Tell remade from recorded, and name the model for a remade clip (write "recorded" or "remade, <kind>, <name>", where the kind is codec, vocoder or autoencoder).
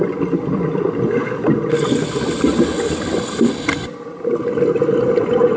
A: recorded